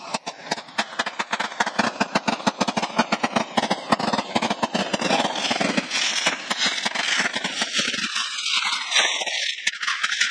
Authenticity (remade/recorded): recorded